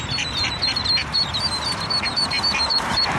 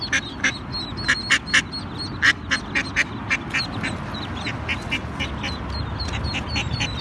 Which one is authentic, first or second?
second